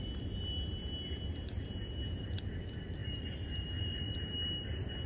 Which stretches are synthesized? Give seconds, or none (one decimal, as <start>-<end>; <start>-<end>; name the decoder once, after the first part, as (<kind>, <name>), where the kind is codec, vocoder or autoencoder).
0.0-5.1 (vocoder, BigVGAN v2)